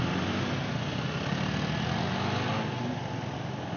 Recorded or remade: recorded